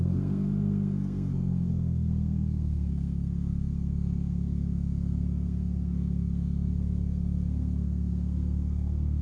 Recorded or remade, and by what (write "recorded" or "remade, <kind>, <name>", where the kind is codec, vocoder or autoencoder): remade, codec, SNAC